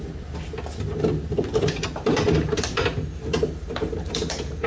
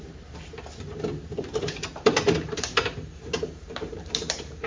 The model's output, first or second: second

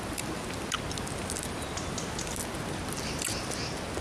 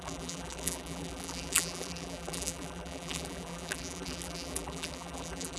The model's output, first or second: second